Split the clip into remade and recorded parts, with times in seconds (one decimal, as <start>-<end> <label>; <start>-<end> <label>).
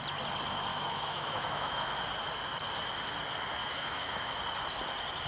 0.0-0.7 recorded; 0.7-2.0 remade; 2.0-3.6 recorded; 3.6-4.4 remade; 4.4-5.3 recorded